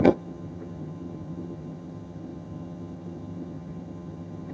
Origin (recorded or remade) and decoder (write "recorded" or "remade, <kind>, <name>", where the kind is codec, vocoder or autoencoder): remade, vocoder, HiFi-GAN